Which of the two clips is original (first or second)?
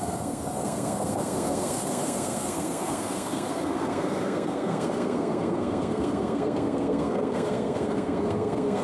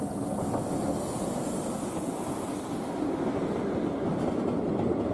second